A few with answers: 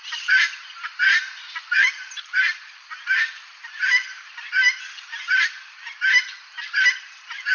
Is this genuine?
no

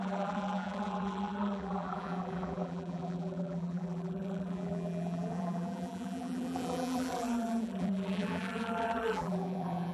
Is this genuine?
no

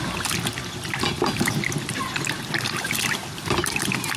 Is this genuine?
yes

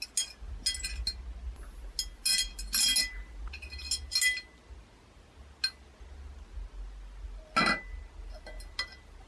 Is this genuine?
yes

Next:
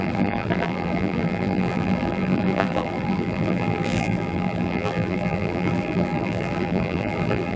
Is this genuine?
no